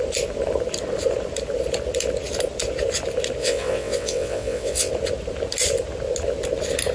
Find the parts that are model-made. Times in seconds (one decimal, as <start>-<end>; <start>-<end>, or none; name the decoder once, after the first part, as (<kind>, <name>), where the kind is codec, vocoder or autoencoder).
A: 3.4-4.9 (vocoder, WaveNeXt)